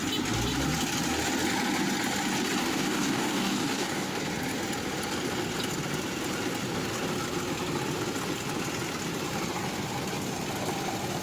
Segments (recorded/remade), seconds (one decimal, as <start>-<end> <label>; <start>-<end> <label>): 0.0-2.6 recorded; 2.6-4.2 remade; 4.2-11.2 recorded